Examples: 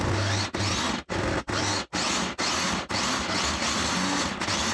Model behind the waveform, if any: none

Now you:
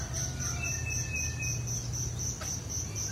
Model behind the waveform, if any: none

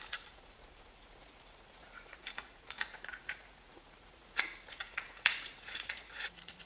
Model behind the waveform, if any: vocoder, Vocos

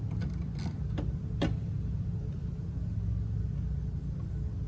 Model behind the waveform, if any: none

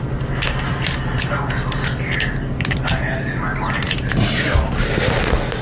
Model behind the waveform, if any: none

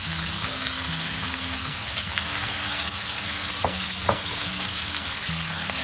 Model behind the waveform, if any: codec, SNAC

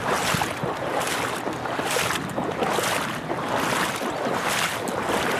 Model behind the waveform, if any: none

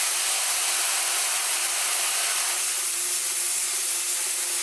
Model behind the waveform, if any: none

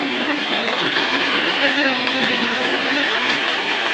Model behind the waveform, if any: codec, SNAC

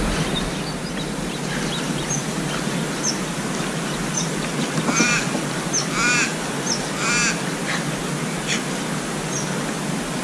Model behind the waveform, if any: none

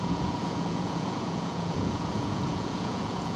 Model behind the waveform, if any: vocoder, Vocos